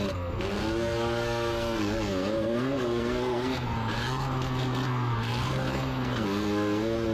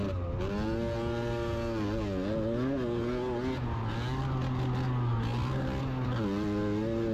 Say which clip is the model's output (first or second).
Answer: first